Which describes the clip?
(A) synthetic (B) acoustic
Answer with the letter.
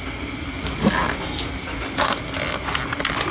B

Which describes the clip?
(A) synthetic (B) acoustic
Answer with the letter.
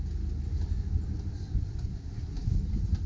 B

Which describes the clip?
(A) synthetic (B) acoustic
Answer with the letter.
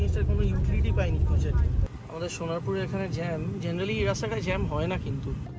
B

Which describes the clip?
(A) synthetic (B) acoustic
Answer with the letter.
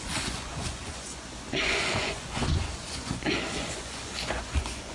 A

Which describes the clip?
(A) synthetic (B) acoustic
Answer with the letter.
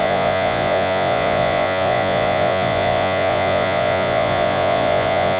A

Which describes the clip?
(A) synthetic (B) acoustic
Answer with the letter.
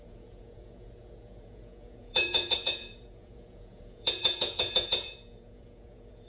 A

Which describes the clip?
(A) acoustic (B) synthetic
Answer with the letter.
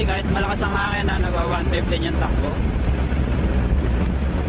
B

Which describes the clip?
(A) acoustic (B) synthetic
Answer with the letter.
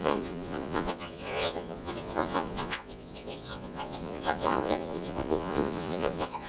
B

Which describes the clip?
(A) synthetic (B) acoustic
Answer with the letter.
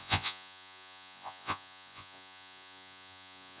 A